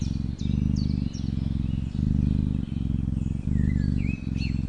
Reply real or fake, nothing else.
real